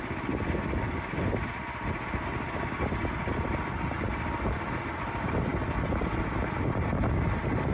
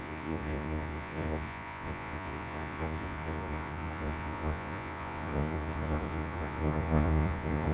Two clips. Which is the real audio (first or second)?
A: first